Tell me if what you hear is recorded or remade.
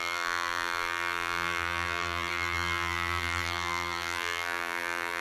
remade